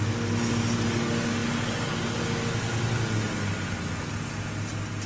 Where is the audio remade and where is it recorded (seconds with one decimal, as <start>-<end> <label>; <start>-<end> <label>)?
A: 0.0-5.1 recorded